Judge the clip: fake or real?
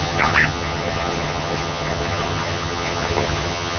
fake